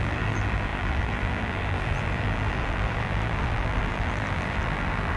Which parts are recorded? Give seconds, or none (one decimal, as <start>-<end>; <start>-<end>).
none